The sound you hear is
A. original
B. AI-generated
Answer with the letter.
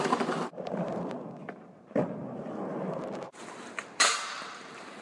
B